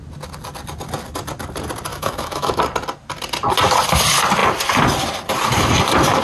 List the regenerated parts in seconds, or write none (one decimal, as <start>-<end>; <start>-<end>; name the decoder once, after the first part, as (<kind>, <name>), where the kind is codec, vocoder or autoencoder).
1.9-2.6 (autoencoder, DAC-VAE)